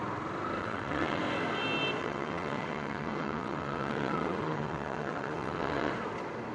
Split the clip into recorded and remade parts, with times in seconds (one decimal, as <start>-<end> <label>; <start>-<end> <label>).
0.0-0.6 recorded; 0.6-1.2 remade; 1.2-2.0 recorded; 2.0-5.9 remade; 5.9-6.5 recorded